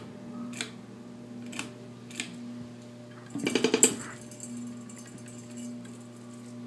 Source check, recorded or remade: recorded